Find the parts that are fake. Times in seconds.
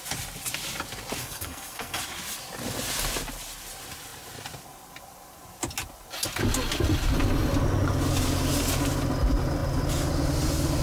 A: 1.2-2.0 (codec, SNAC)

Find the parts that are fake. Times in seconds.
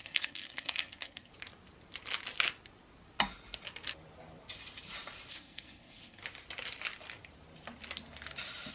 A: 0.0-1.3 (codec, SNAC); 5.3-6.2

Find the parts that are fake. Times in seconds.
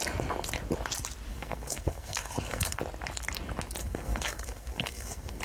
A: 1.3-2.8 (codec, SNAC); 3.8-5.4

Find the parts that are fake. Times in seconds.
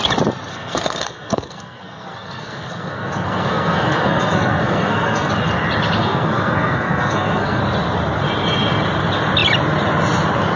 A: 0.5-5.3 (codec, SNAC); 6.0-7.6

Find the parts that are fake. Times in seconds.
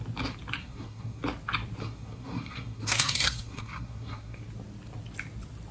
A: 0.6-1.2 (codec, SNAC); 1.8-4.4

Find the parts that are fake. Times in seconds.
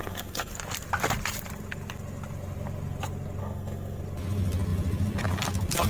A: 0.0-0.5 (codec, SNAC); 3.4-4.0